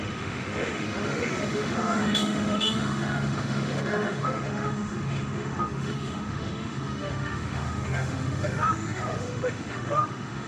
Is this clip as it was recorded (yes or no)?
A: no